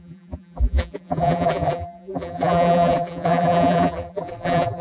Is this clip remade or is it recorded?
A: remade